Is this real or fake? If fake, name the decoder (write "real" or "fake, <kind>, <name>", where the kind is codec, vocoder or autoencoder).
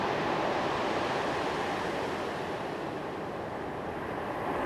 fake, vocoder, BigVGAN v2